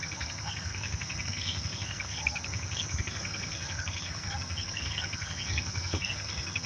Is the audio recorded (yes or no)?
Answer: no